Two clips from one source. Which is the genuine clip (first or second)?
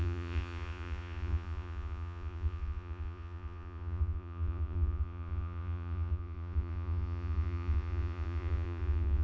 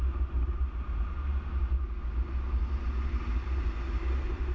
second